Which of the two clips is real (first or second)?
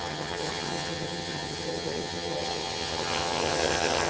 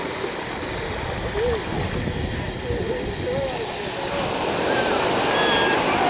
second